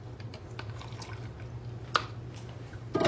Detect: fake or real real